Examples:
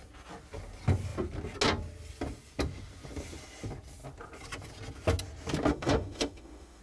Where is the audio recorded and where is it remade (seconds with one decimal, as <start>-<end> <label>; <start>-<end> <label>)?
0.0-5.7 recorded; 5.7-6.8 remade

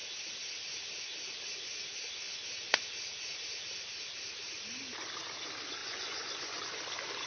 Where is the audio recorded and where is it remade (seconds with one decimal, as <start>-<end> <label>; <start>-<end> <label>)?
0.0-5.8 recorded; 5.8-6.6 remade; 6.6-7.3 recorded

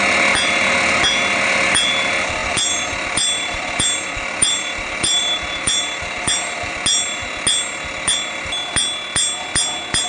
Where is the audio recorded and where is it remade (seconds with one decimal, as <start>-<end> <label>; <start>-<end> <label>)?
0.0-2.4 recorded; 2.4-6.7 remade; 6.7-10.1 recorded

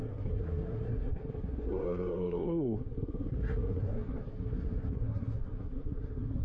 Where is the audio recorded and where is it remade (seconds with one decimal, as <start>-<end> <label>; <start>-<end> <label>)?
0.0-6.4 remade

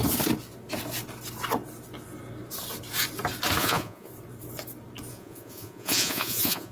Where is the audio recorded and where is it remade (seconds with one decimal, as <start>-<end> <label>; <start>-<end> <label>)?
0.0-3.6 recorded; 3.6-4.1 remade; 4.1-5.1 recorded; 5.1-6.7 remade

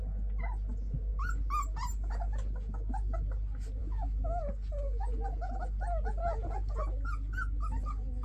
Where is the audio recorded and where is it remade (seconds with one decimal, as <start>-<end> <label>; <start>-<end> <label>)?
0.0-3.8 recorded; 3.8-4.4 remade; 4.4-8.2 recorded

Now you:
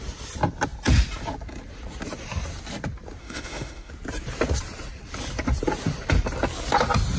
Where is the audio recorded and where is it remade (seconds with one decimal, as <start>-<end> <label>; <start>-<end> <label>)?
0.0-3.2 recorded; 3.2-3.9 remade; 3.9-7.2 recorded